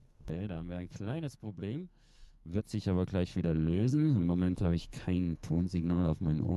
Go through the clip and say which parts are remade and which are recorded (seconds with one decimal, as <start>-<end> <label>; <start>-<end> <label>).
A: 0.0-2.6 remade; 2.6-3.3 recorded; 3.3-6.6 remade